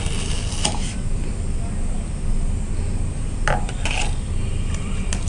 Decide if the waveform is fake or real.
real